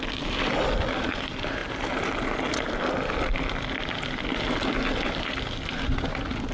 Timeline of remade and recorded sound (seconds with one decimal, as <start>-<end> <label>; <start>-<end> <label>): 0.0-6.5 recorded